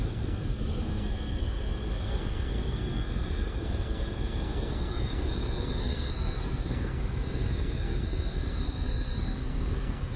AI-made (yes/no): yes